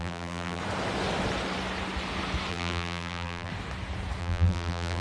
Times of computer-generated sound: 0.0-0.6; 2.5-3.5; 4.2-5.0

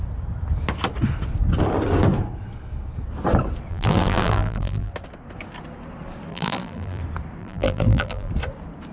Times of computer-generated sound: 3.7-4.9; 6.3-7.0; 7.4-8.3

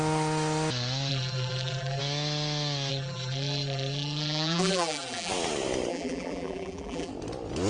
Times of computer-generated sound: 1.1-2.0; 2.9-5.3; 5.9-7.1

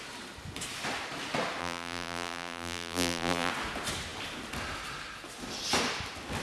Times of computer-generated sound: 1.6-3.5

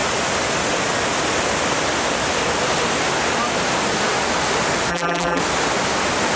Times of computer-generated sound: 4.9-5.4

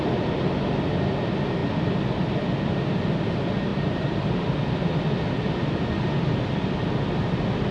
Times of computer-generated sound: 3.7-4.7